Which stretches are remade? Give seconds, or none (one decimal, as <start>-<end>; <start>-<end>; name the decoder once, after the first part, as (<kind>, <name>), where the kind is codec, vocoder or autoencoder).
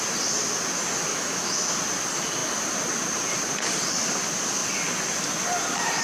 1.1-1.7 (autoencoder, DAC-VAE)